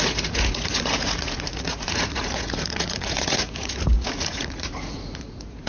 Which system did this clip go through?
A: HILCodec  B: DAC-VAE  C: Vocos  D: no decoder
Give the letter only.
C